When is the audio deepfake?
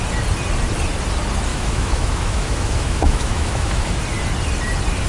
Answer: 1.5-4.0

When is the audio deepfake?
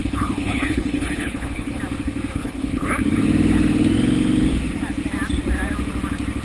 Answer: 0.0-1.8; 2.3-2.9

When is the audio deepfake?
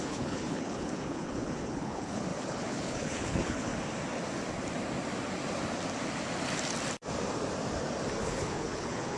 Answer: 0.0-3.7; 8.2-9.2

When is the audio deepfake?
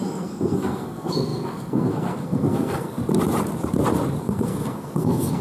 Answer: 0.0-3.0; 4.2-5.4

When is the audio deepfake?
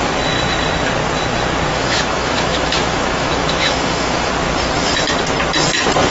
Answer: 1.7-4.3